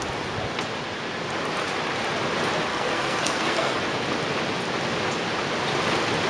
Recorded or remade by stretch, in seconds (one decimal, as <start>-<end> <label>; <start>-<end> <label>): 0.0-2.7 recorded; 2.7-3.8 remade; 3.8-6.3 recorded